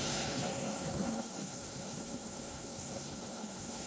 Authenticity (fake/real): fake